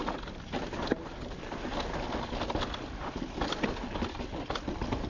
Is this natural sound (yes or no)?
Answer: yes